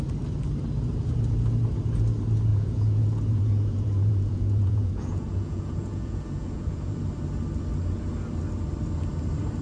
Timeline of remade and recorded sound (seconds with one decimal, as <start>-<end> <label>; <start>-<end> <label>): 0.0-2.5 recorded; 2.5-7.0 remade; 7.0-9.6 recorded